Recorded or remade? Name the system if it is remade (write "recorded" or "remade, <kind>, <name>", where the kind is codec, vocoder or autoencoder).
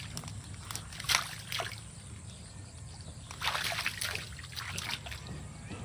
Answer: recorded